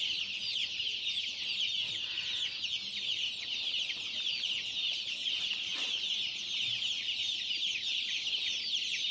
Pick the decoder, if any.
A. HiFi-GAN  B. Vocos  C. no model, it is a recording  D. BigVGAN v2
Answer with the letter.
C